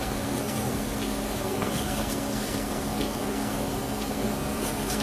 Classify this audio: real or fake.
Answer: fake